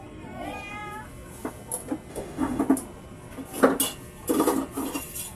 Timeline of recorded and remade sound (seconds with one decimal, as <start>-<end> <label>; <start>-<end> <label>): 0.0-2.1 recorded; 2.1-2.6 remade; 2.6-5.3 recorded